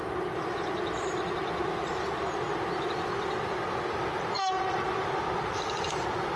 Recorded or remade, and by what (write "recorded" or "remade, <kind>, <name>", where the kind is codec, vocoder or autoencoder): recorded